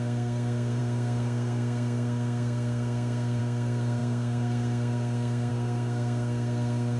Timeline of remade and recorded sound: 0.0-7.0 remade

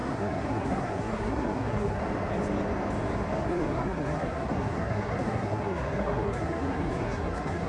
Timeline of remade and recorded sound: 0.0-2.0 remade; 2.0-3.4 recorded; 3.4-7.7 remade

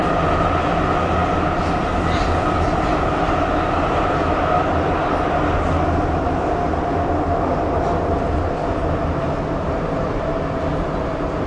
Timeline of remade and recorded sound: 0.0-11.5 recorded

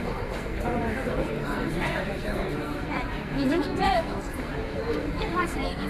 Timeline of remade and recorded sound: 0.0-5.9 remade

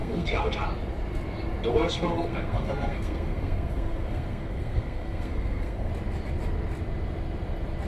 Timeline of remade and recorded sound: 0.0-0.6 remade; 0.6-1.7 recorded; 1.7-5.9 remade; 5.9-7.9 recorded

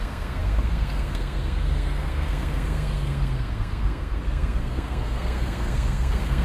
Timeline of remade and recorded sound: 0.0-6.4 remade

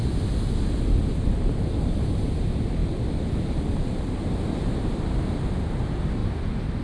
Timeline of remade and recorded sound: 0.0-6.8 recorded